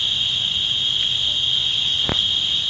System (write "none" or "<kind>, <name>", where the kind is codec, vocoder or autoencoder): none